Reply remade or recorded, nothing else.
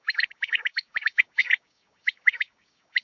remade